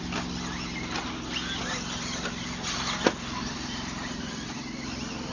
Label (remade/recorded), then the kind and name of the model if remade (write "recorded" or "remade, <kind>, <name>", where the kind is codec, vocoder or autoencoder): recorded